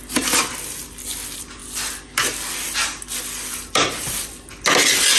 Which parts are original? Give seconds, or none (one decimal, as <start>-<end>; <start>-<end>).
0.0-5.2